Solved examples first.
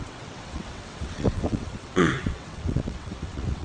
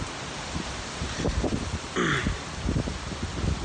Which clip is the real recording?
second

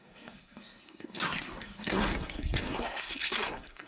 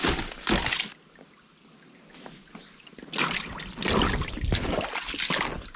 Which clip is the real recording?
second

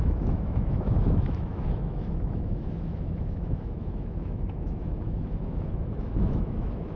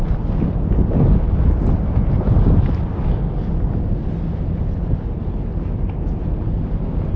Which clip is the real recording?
second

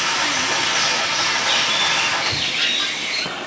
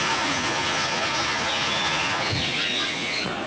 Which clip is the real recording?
first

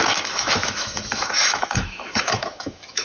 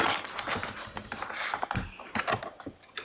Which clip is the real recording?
second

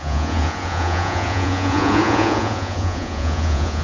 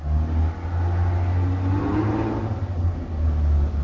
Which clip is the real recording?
second